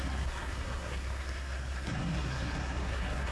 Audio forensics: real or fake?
fake